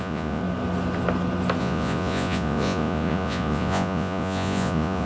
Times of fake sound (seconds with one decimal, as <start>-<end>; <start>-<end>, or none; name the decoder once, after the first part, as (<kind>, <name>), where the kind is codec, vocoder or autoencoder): 0.0-0.4 (vocoder, Vocos); 1.6-5.1

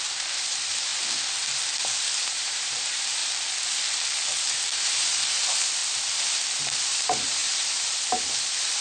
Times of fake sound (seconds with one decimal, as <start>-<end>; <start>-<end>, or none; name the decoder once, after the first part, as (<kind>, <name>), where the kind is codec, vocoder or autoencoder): 0.0-0.9 (vocoder, BigVGAN v2); 2.0-3.2; 4.4-5.8; 6.6-8.8

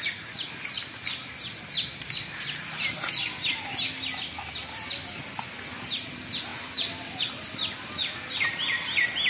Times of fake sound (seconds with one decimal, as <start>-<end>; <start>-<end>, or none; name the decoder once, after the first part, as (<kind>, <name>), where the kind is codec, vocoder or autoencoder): none

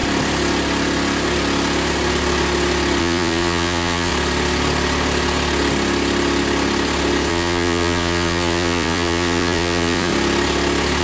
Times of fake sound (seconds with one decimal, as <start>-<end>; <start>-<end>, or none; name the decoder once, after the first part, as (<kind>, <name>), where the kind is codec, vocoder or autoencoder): 3.0-4.1 (vocoder, Vocos); 7.3-10.1

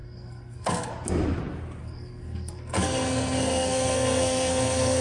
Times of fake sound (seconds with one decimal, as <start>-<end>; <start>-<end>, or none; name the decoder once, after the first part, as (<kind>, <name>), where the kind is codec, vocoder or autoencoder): 0.0-0.9 (codec, SNAC); 1.8-5.0

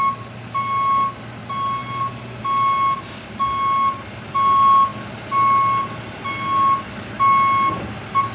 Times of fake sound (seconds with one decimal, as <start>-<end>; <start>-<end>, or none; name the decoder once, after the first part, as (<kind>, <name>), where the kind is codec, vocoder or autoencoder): none

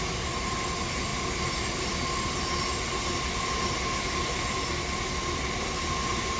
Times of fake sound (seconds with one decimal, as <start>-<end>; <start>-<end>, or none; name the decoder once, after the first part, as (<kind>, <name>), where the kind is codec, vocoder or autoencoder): none